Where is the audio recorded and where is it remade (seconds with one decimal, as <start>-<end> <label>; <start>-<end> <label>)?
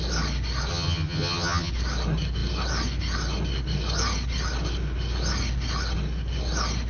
0.0-0.7 recorded; 0.7-1.7 remade; 1.7-6.9 recorded